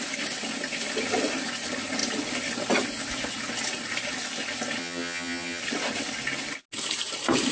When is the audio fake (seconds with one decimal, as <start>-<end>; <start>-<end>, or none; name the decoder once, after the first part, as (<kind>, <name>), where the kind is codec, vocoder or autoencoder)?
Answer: 4.8-5.6 (vocoder, HiFi-GAN)